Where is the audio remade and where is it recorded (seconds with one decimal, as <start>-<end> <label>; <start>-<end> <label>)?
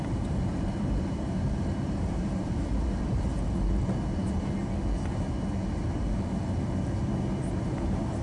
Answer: 0.0-3.8 remade; 3.8-7.6 recorded; 7.6-8.2 remade